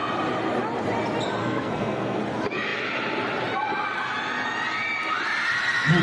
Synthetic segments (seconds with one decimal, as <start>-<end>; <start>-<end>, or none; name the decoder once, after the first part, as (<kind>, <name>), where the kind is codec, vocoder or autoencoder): 1.4-2.2 (codec, SNAC)